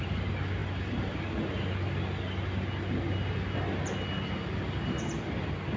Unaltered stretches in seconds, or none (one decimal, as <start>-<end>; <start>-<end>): 0.0-5.8